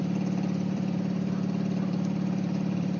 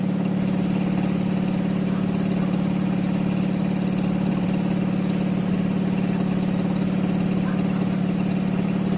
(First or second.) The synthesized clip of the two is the first